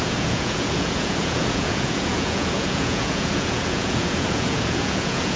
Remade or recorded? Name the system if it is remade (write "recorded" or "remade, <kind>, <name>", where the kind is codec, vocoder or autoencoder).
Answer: remade, vocoder, Vocos